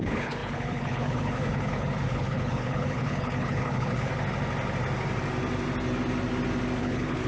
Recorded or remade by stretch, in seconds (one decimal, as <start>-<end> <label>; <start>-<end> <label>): 0.0-4.1 remade; 4.1-6.8 recorded; 6.8-7.3 remade